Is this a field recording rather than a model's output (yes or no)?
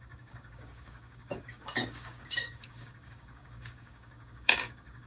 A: no